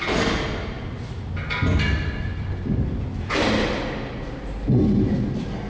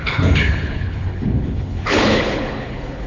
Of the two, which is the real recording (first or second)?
first